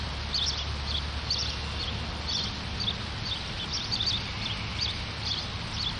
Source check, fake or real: real